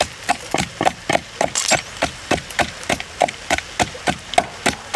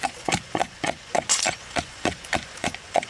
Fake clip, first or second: second